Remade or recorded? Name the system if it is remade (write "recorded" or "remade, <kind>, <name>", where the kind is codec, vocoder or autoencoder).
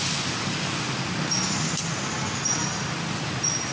recorded